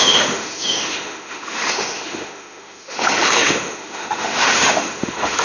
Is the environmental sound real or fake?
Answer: fake